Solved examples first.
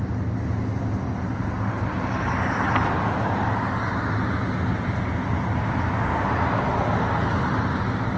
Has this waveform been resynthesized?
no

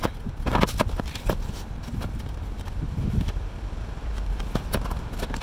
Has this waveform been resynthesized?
no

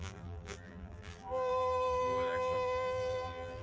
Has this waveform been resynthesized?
yes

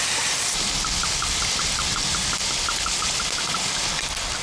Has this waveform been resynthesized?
no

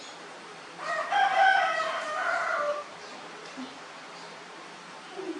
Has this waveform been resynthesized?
yes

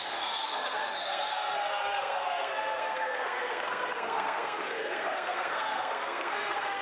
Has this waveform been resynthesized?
yes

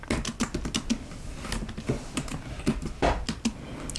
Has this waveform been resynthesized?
no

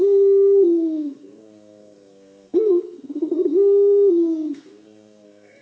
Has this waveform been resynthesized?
yes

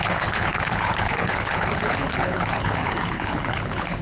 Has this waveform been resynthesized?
yes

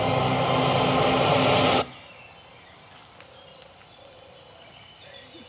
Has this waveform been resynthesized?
no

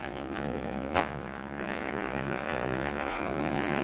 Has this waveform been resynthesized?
yes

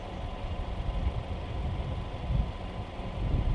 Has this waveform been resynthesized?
no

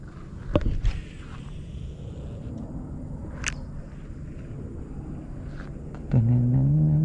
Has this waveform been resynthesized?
no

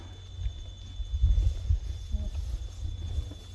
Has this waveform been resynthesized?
no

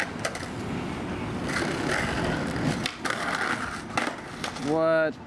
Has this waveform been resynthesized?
no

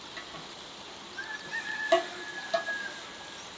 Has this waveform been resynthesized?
no